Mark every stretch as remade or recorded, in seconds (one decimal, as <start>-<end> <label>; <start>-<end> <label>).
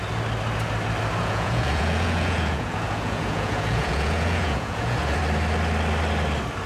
0.0-1.2 recorded; 1.2-5.2 remade; 5.2-6.7 recorded